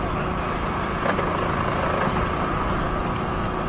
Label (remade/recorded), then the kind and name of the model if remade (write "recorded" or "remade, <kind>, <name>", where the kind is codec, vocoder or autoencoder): recorded